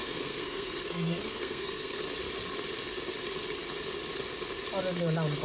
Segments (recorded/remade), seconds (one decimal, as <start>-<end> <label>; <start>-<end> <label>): 0.0-2.0 remade; 2.0-5.4 recorded